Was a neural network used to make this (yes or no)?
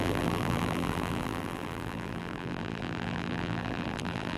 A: yes